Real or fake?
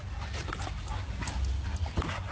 real